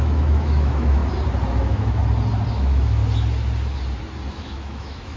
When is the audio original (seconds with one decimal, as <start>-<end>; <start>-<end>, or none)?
1.0-1.5; 2.0-2.5; 3.0-4.3